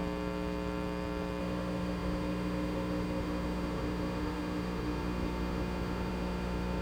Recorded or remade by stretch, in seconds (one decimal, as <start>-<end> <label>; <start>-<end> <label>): 0.0-1.4 recorded; 1.4-6.8 remade